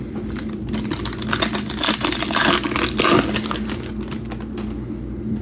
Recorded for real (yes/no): yes